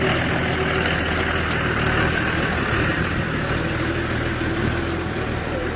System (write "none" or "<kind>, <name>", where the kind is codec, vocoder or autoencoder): none